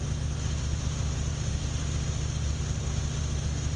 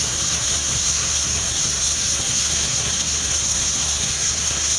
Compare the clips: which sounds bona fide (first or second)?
first